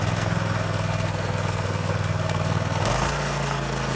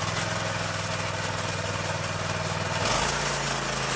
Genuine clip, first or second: second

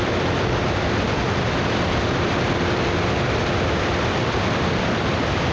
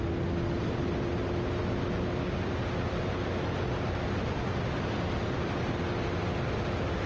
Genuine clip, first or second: second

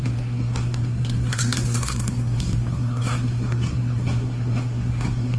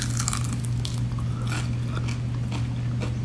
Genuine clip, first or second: second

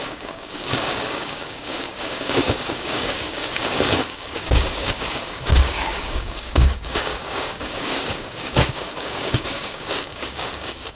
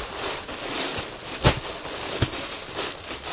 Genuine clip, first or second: second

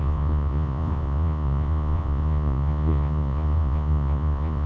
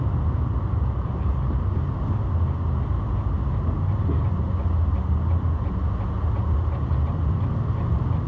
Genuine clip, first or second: second